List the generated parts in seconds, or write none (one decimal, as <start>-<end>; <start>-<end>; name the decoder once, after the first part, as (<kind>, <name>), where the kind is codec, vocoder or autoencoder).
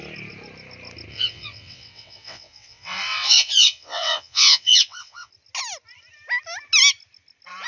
1.1-5.3 (vocoder, WaveNeXt)